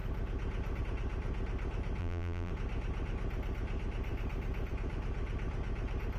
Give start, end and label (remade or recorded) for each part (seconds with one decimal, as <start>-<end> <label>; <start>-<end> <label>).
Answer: 0.0-2.0 recorded; 2.0-2.5 remade; 2.5-6.2 recorded